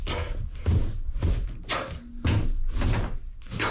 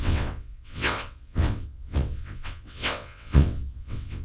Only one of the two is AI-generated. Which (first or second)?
second